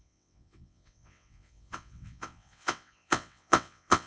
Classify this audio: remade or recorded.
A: remade